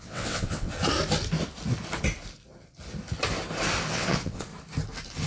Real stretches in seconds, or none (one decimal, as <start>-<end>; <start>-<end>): 0.7-3.9; 4.5-5.3